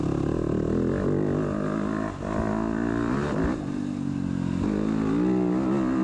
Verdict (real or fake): real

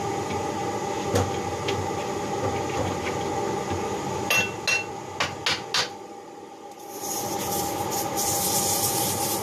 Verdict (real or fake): real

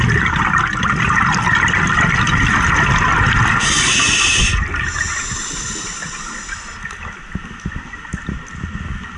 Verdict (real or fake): real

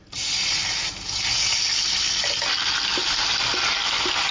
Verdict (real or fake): real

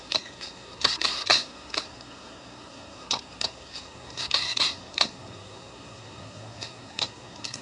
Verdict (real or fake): fake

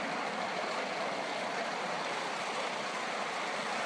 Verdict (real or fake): real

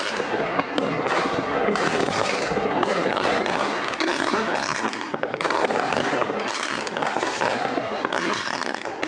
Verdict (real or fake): fake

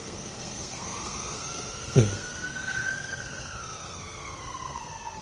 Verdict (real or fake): fake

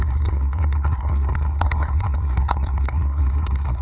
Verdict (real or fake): fake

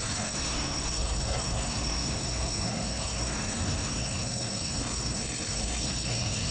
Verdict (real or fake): fake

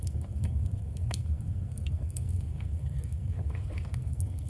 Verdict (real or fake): fake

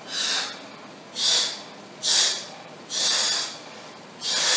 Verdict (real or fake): real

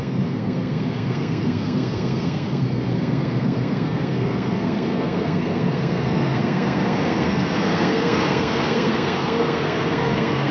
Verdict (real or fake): fake